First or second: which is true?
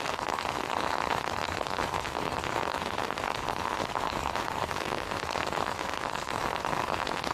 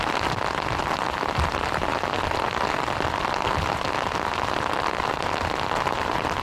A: second